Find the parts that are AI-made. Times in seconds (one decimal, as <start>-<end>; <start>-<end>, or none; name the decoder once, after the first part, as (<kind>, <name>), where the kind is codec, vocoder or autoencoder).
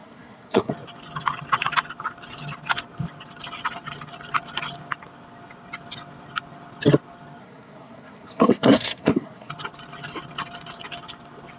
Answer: 0.0-0.7 (codec, SNAC); 7.4-9.5